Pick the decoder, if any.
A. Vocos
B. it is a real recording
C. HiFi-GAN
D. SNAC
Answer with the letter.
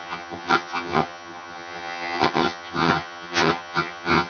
C